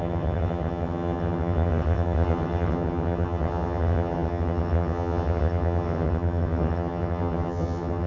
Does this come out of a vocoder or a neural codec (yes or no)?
yes